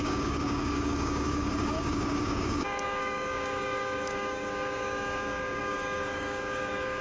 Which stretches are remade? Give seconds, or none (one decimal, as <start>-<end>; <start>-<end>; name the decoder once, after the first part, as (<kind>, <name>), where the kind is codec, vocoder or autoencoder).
0.0-7.0 (codec, DAC)